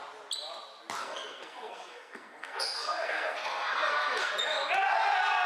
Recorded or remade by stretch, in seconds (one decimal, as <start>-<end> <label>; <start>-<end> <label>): 0.0-1.0 recorded; 1.0-4.3 remade; 4.3-5.5 recorded